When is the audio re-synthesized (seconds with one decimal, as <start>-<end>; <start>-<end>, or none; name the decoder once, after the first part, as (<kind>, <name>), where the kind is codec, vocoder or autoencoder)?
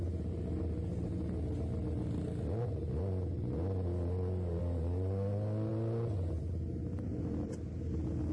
none